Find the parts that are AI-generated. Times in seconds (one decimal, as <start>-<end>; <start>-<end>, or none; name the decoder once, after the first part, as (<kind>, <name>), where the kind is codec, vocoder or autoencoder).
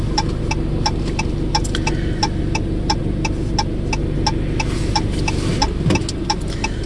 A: none